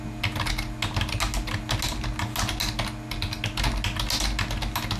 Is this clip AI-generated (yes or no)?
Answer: no